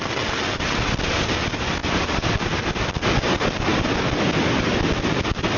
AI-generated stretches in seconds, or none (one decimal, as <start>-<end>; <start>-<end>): 1.8-2.6